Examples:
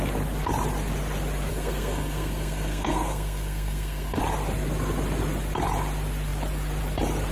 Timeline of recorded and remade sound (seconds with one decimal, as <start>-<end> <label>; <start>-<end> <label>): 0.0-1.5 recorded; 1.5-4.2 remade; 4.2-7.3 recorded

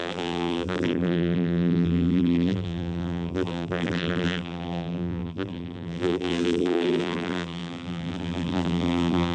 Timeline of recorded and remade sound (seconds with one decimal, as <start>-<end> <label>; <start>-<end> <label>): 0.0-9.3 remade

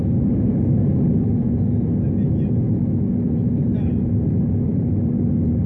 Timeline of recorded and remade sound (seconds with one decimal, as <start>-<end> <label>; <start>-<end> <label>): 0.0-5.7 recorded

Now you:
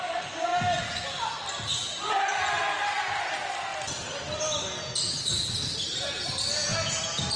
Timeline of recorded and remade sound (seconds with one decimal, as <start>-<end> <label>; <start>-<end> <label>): 0.0-1.8 recorded; 1.8-2.6 remade; 2.6-3.7 recorded; 3.7-4.4 remade; 4.4-7.4 recorded

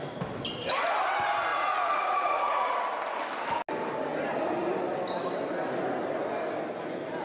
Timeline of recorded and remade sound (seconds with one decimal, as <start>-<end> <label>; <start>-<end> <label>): 0.0-1.5 recorded; 1.5-2.7 remade; 2.7-7.2 recorded